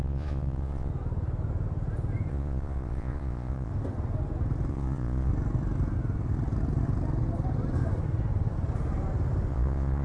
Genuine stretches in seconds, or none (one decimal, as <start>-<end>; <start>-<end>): 0.9-2.3; 3.7-4.7; 5.3-9.5